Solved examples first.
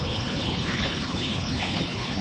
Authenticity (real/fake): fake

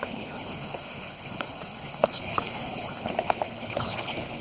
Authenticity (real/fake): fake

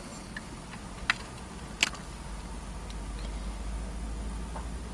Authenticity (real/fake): real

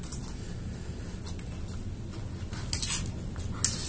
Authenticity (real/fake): real